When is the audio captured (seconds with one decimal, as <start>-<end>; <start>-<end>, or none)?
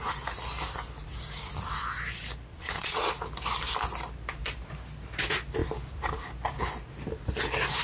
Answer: 0.0-2.5; 3.1-7.8